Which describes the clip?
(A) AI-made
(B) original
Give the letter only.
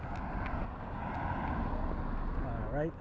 B